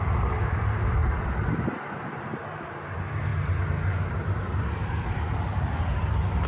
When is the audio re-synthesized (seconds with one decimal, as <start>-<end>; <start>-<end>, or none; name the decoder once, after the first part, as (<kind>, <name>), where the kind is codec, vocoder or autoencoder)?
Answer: 1.0-2.8 (vocoder, BigVGAN v2); 3.3-6.5